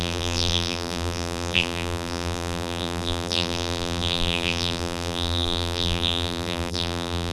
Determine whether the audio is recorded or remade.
remade